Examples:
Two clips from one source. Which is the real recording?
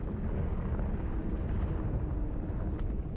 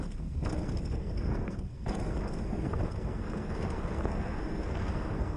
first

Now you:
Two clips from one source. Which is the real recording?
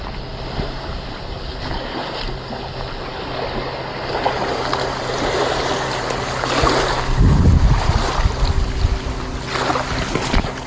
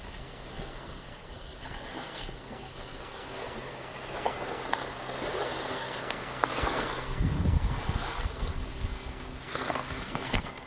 first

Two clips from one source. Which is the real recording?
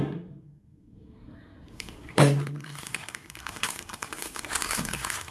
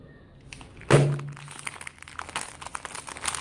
second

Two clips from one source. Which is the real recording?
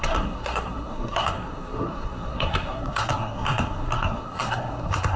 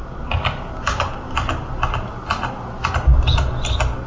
second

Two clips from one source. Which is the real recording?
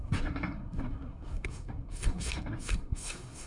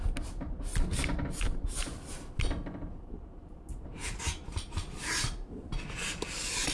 second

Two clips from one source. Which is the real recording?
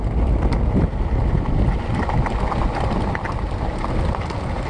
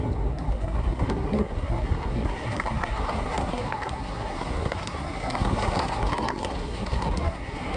first